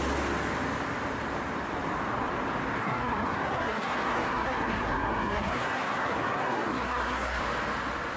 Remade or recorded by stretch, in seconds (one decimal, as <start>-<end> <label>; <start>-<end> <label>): 0.0-2.8 recorded; 2.8-7.4 remade; 7.4-8.2 recorded